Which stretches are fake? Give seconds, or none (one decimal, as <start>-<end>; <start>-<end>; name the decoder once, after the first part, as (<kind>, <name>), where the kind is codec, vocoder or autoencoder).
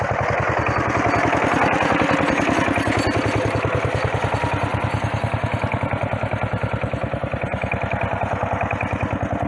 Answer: none